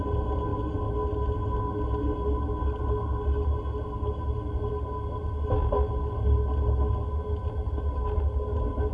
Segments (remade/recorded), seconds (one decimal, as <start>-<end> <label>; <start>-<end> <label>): 0.0-8.9 recorded